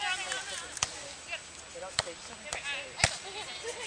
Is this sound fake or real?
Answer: real